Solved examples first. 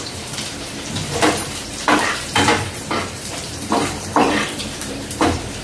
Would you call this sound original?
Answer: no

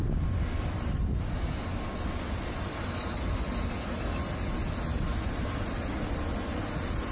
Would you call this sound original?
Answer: yes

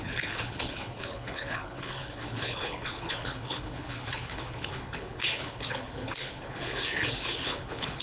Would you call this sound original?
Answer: no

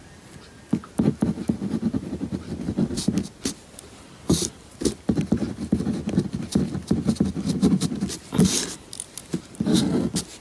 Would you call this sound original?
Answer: yes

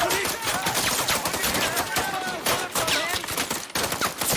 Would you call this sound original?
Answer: yes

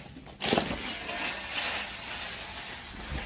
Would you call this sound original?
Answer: yes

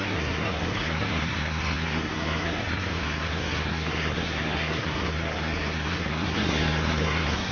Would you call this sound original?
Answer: no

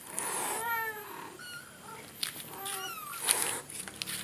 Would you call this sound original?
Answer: yes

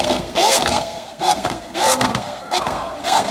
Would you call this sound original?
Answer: no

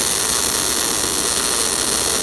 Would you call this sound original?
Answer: yes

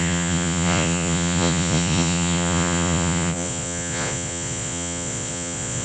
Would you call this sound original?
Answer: no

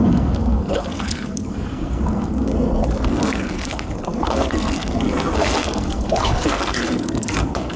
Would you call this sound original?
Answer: no